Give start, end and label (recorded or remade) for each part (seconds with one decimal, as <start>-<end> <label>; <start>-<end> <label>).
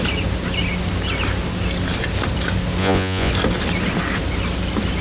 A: 0.0-2.8 recorded; 2.8-3.3 remade; 3.3-5.0 recorded